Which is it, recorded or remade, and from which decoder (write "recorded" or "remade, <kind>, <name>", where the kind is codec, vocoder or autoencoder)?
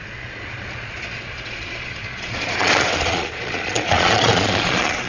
remade, vocoder, Vocos